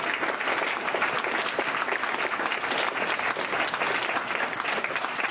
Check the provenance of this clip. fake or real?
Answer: real